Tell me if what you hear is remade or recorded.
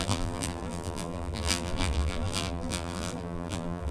remade